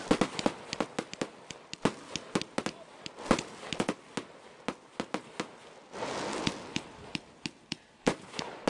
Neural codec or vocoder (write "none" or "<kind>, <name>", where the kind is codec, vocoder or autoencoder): none